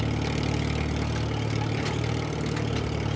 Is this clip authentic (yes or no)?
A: yes